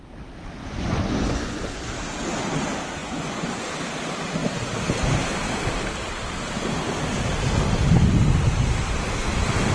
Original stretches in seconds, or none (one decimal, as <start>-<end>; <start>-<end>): 0.0-0.6; 1.8-3.0; 3.7-9.7